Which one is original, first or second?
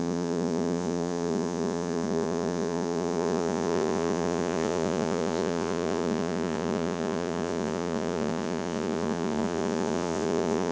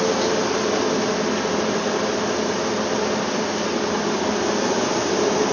second